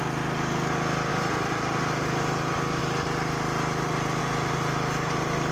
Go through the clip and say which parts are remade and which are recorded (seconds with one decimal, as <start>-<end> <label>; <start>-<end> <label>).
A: 0.0-1.1 recorded; 1.1-2.8 remade; 2.8-4.2 recorded; 4.2-5.5 remade